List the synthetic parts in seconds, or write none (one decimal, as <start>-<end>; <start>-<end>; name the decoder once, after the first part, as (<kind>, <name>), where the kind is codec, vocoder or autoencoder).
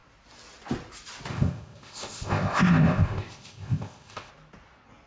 1.3-4.3 (codec, ZipCodec)